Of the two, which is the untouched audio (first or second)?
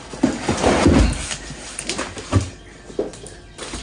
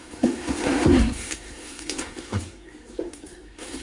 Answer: first